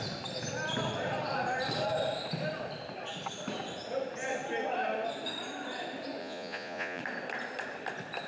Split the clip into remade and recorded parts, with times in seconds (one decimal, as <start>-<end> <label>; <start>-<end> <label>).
0.0-6.2 recorded; 6.2-7.0 remade; 7.0-8.3 recorded